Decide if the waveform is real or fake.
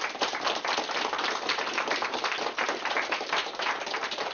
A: fake